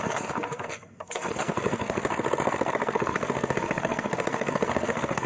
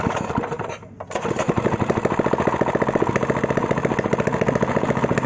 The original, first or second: second